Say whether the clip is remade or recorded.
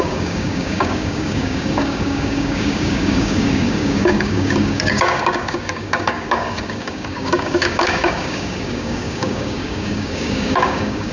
remade